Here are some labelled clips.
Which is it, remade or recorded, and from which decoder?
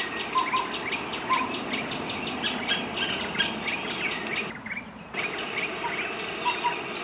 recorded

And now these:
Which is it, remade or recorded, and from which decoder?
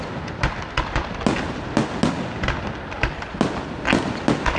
recorded